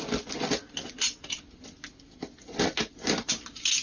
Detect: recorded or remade recorded